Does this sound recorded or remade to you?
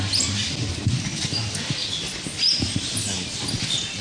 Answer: recorded